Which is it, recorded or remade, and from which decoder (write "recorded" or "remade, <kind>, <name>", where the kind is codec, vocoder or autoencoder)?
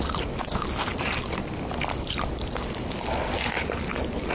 remade, vocoder, BigVGAN v2